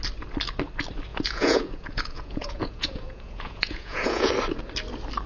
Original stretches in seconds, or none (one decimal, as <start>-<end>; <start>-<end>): 0.0-1.1; 4.3-5.3